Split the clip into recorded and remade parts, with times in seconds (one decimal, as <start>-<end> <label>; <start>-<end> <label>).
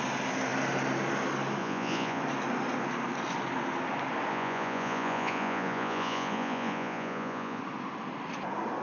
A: 0.0-1.6 recorded; 1.6-2.2 remade; 2.2-4.3 recorded; 4.3-7.6 remade; 7.6-8.8 recorded